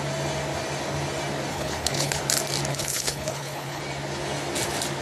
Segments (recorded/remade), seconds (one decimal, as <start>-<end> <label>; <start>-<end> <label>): 0.0-1.5 recorded; 1.5-2.2 remade; 2.2-2.7 recorded; 2.7-3.8 remade; 3.8-5.0 recorded